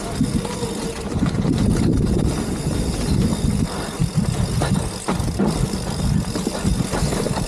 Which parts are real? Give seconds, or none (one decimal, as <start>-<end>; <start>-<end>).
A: 0.0-7.5